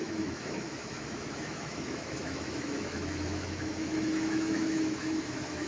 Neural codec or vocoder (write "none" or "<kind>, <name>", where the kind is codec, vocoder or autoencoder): autoencoder, DAC-VAE